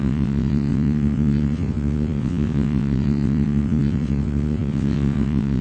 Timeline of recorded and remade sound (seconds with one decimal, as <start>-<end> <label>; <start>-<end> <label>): 0.0-5.6 remade